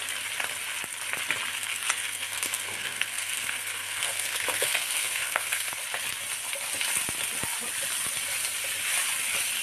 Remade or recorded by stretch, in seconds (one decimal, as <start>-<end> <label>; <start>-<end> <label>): 0.0-1.5 recorded; 1.5-5.8 remade; 5.8-9.6 recorded